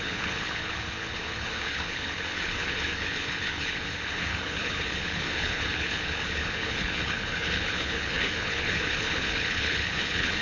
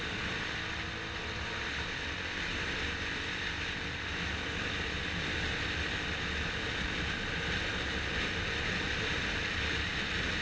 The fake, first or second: first